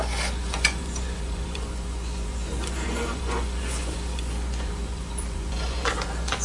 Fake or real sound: fake